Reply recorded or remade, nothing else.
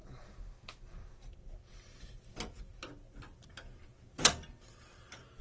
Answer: recorded